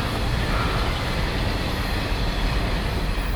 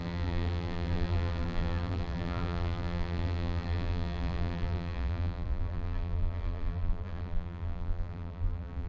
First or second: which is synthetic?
second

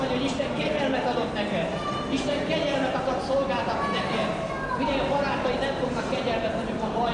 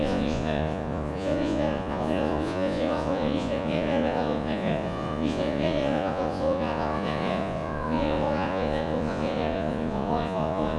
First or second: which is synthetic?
second